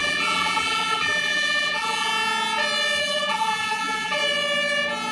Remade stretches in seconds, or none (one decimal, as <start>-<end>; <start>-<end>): 0.0-2.1; 3.0-4.2